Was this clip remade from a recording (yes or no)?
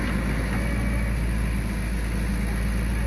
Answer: no